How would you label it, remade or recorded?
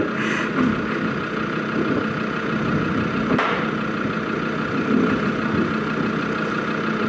recorded